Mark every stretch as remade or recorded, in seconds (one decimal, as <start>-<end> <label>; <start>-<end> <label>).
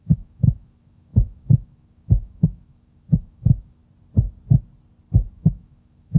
0.0-3.8 remade; 3.8-5.3 recorded; 5.3-6.2 remade